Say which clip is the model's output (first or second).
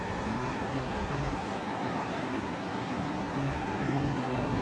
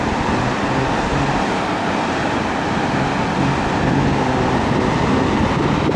first